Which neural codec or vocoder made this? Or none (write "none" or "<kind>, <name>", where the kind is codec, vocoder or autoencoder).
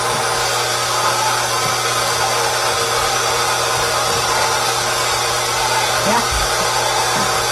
none